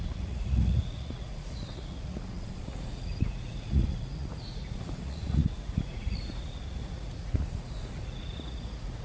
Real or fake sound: fake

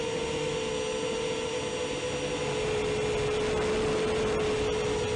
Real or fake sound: real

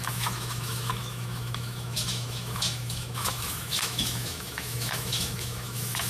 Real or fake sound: fake